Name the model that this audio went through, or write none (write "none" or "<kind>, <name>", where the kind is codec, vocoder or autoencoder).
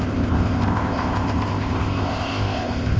codec, ZipCodec